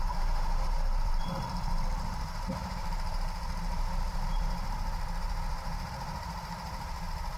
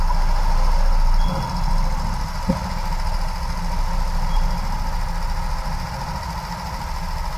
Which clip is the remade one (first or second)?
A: first